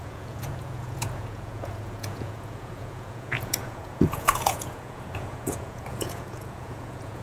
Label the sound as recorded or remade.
remade